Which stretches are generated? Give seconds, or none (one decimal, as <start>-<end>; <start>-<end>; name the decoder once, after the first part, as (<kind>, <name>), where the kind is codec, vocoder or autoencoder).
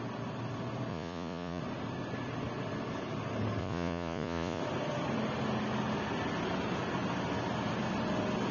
0.9-1.6 (vocoder, Vocos); 3.6-4.6